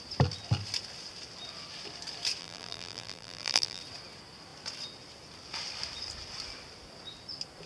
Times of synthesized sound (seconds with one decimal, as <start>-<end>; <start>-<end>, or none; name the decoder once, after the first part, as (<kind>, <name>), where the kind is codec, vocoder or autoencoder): 2.4-3.8 (vocoder, BigVGAN v2)

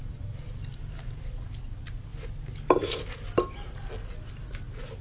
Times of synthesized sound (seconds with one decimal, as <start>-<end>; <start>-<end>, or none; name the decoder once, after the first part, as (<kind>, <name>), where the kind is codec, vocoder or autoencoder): 0.0-0.8 (vocoder, BigVGAN v2)

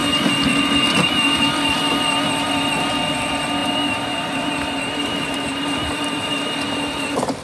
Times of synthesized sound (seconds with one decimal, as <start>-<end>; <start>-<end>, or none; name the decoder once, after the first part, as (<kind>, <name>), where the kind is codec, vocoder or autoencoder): 3.6-7.4 (vocoder, BigVGAN v2)

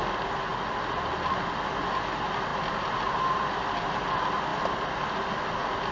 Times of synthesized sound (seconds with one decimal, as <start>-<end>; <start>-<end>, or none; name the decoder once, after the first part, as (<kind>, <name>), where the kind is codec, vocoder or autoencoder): 2.5-3.7 (vocoder, BigVGAN v2)